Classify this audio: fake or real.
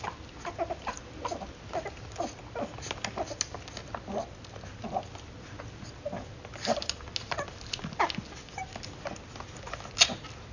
real